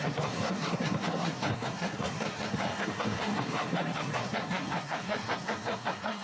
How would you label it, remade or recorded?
remade